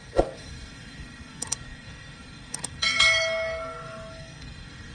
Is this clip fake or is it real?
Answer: fake